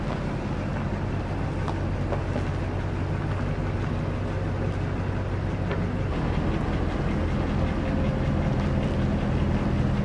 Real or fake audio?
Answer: real